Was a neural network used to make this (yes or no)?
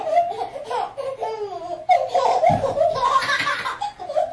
no